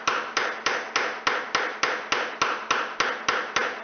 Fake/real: real